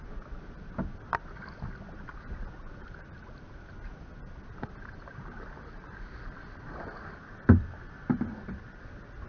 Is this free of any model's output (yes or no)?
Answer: yes